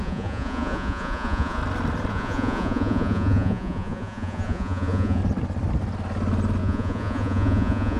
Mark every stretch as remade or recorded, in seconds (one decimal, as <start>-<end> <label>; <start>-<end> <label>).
0.0-1.6 remade; 1.6-2.1 recorded; 2.1-5.2 remade; 5.2-6.6 recorded; 6.6-8.0 remade